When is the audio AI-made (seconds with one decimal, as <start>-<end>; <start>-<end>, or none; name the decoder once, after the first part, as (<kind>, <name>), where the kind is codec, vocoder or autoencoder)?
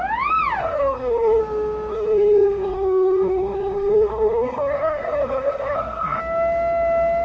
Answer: 0.6-1.4 (codec, SNAC); 1.9-6.2